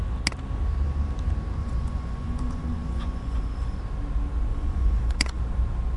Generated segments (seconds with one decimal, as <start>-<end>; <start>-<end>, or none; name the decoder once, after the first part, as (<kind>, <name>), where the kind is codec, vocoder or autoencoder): 1.6-3.8 (vocoder, Vocos); 4.5-5.4